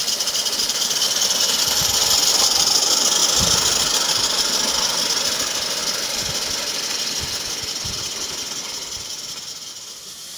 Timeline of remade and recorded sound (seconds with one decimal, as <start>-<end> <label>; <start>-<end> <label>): 0.0-0.9 remade; 0.9-10.4 recorded